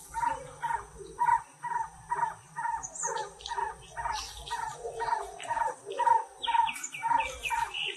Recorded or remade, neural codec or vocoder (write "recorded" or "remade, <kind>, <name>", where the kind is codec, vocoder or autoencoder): recorded